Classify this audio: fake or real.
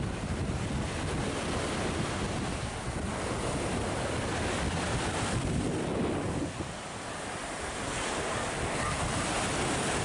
real